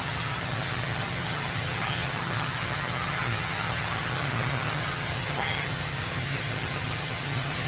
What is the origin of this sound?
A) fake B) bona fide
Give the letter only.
A